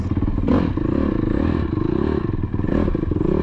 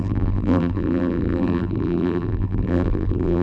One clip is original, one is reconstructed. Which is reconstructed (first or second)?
second